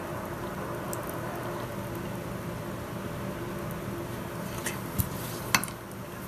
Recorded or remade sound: recorded